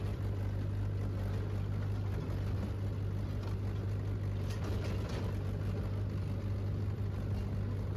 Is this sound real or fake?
real